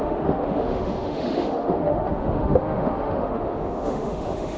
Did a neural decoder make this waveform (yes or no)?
yes